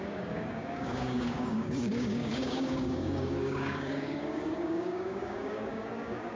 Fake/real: fake